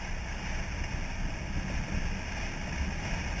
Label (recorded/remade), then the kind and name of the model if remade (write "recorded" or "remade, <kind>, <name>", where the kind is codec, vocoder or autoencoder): recorded